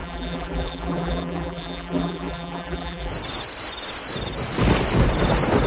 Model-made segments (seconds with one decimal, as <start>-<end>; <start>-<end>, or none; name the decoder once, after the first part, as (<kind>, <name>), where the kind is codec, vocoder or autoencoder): 0.0-3.1 (vocoder, BigVGAN v2)